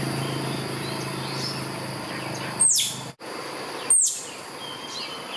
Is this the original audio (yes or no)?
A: yes